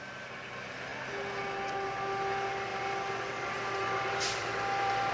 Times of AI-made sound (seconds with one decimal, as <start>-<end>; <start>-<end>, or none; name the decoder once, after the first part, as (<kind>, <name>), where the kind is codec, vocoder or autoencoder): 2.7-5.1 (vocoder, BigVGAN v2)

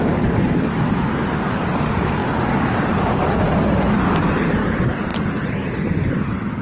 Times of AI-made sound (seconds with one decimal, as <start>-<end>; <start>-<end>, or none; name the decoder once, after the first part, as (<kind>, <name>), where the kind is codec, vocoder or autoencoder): 5.1-6.1 (vocoder, BigVGAN v2)

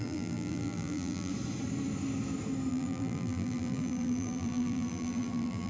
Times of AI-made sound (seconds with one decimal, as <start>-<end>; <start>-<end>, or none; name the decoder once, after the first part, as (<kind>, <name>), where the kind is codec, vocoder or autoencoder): 0.0-1.3 (vocoder, BigVGAN v2); 2.7-5.7

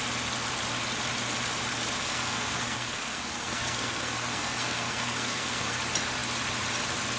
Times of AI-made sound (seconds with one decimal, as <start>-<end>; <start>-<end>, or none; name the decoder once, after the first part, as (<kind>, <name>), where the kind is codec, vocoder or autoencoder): 2.0-5.8 (codec, SNAC)

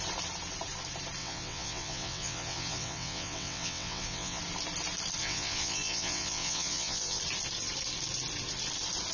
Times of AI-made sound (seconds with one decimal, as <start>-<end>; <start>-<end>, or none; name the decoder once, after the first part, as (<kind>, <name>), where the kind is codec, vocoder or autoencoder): 1.2-4.4 (vocoder, WaveNeXt); 5.2-7.2

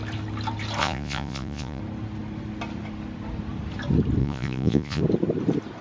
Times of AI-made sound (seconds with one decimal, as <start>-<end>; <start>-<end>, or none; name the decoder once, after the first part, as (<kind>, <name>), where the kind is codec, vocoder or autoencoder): 0.8-1.8 (vocoder, Vocos); 4.2-5.0

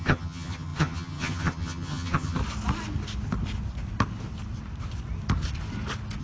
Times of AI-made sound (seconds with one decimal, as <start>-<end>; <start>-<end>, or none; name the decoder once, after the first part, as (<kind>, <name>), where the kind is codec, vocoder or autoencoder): 0.0-2.4 (vocoder, HiFi-GAN)